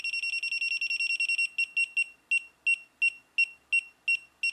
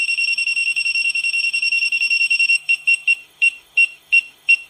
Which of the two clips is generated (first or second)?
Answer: second